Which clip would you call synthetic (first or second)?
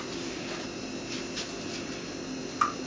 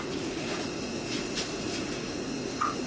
second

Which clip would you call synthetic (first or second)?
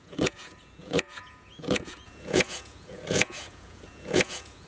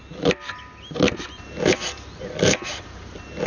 first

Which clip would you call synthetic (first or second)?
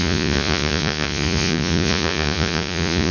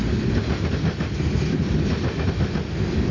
first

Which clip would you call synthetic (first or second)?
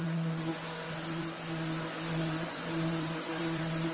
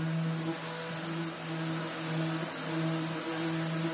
first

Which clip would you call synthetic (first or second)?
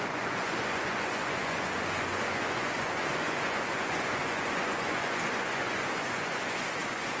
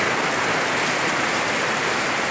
first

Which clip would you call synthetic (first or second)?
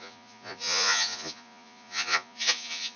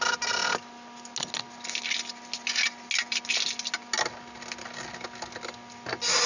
first